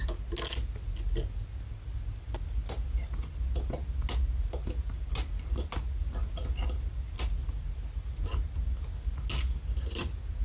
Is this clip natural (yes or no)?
yes